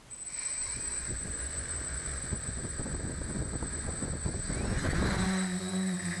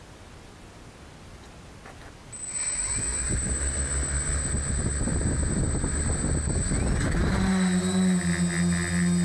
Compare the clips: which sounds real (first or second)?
second